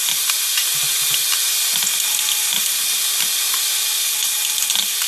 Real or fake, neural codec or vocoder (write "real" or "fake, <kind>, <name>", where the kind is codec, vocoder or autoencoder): real